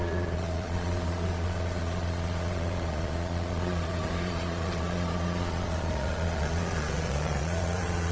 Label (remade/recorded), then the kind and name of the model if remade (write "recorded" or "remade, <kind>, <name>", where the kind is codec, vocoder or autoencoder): remade, vocoder, Vocos